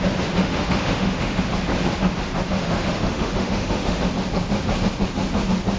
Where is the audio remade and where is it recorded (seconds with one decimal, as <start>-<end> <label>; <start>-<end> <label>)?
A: 0.0-0.4 recorded; 0.4-1.4 remade; 1.4-2.6 recorded; 2.6-4.0 remade; 4.0-5.8 recorded